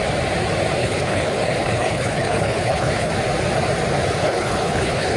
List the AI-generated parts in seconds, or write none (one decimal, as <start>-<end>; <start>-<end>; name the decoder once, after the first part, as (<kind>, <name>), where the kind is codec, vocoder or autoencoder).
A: 0.8-3.1 (codec, HILCodec); 4.2-5.2